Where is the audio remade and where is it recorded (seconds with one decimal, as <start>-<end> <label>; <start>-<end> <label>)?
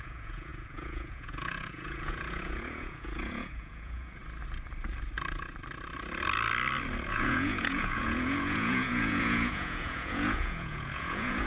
0.0-4.2 remade; 4.2-7.1 recorded; 7.1-11.5 remade